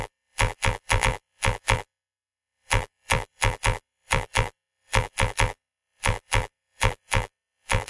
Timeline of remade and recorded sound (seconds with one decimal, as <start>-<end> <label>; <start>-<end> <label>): 0.0-7.9 remade